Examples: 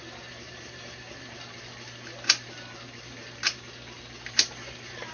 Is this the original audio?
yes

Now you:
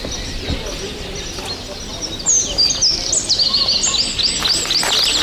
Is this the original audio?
yes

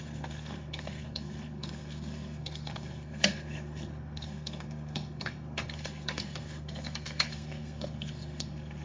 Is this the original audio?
no